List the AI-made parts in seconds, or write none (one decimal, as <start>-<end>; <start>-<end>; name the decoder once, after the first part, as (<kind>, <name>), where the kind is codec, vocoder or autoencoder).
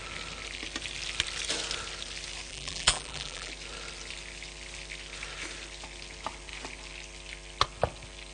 2.5-3.5 (vocoder, BigVGAN v2)